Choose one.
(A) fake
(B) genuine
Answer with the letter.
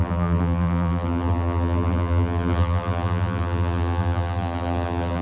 A